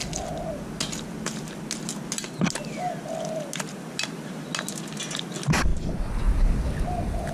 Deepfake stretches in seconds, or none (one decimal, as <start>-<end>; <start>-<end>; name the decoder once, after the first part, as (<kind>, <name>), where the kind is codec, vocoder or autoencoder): none